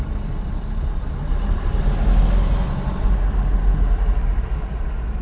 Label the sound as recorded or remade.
recorded